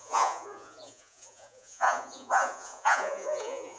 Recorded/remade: remade